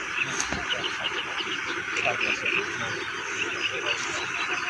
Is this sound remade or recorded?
recorded